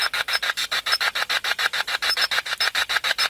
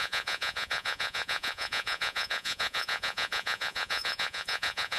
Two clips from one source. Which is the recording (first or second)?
first